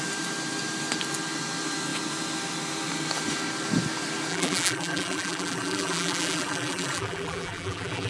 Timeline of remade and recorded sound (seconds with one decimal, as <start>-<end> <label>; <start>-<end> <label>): 0.0-4.3 recorded; 4.3-8.1 remade